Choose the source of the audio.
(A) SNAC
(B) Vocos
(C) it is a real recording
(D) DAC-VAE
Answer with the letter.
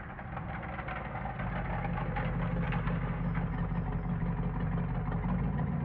C